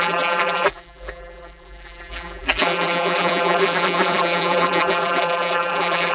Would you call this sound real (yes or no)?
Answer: no